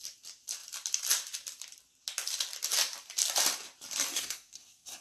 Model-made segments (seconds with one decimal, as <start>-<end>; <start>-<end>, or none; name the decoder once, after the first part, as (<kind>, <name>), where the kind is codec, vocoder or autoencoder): 4.1-5.0 (codec, SNAC)